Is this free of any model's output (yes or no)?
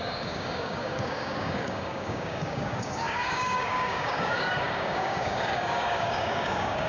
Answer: no